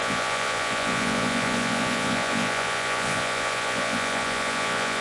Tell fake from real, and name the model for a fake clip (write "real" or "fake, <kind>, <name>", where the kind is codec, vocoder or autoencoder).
fake, vocoder, Vocos